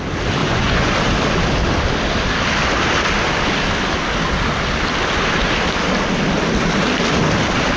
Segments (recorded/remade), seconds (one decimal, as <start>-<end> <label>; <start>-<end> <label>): 0.0-0.4 recorded; 0.4-0.9 remade; 0.9-7.8 recorded